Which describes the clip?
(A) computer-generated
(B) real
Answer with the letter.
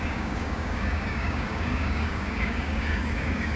A